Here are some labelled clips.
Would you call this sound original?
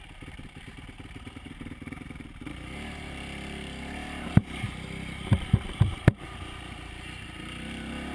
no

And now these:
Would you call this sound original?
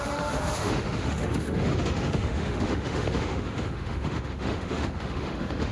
no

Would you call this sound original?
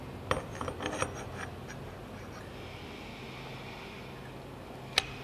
yes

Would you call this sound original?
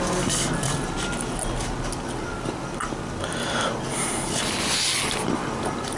yes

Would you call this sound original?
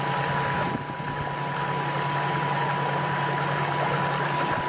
yes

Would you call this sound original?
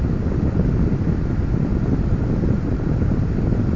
yes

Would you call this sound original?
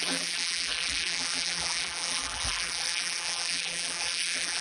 no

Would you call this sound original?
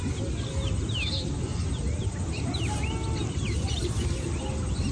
yes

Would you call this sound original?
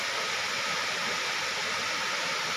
yes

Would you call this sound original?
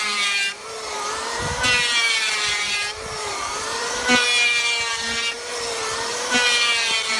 no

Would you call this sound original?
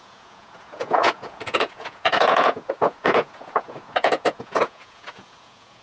no